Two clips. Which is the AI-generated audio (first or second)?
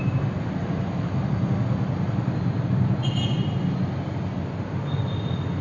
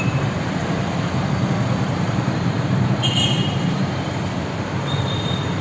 second